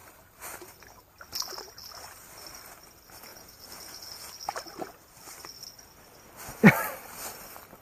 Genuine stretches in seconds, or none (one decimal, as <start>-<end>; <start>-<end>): 0.0-3.3; 4.3-7.8